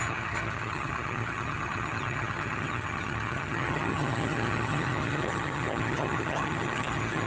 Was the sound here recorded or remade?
remade